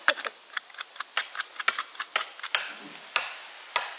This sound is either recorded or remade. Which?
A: recorded